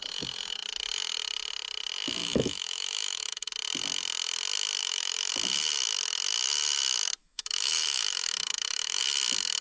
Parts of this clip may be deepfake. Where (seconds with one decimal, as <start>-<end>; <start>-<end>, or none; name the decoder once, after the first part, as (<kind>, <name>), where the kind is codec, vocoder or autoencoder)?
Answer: 2.2-3.5 (autoencoder, DAC-VAE); 4.8-5.3; 7.2-9.0